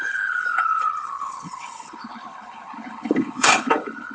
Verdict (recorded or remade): remade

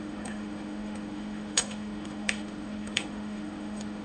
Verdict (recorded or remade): remade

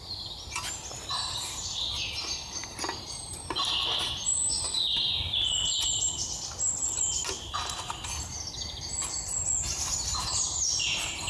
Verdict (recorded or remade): recorded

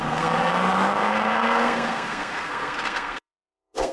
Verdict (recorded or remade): remade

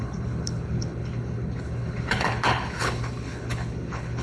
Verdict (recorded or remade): remade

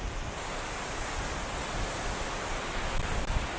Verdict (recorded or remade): recorded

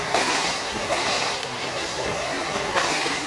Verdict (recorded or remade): remade